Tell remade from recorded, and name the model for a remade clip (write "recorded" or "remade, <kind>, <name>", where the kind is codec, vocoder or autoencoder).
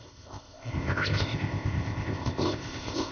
remade, codec, ZipCodec